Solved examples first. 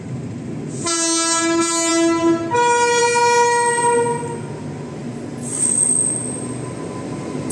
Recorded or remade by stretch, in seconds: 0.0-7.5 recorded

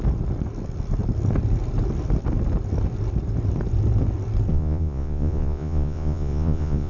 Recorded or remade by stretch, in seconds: 0.0-4.5 recorded; 4.5-6.9 remade

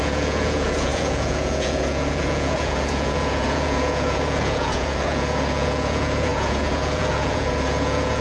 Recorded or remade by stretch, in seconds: 0.0-8.2 remade

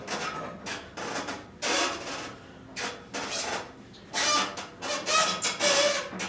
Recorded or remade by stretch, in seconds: 0.0-6.3 recorded

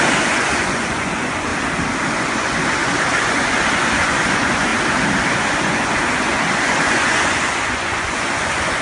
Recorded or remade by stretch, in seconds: 0.0-1.5 remade; 1.5-2.1 recorded; 2.1-4.7 remade; 4.7-5.3 recorded; 5.3-8.8 remade

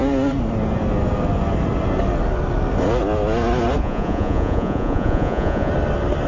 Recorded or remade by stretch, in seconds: 0.0-3.8 recorded; 3.8-5.7 remade; 5.7-6.3 recorded

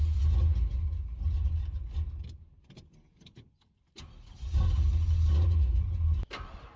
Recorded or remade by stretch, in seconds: 0.0-6.8 recorded